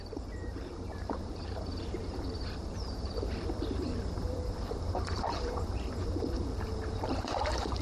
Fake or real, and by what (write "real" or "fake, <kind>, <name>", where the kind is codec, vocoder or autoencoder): fake, vocoder, BigVGAN v2